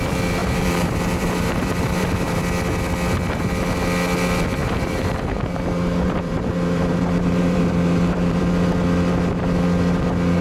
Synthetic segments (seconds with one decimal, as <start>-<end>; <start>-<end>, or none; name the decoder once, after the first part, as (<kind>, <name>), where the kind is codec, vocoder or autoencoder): 0.4-2.4 (vocoder, BigVGAN v2); 4.6-8.4